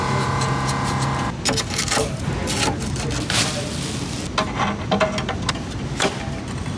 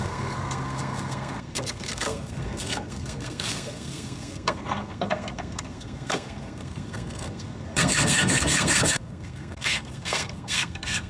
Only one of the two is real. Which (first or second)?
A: first